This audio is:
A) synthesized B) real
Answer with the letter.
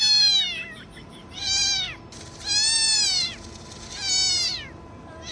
A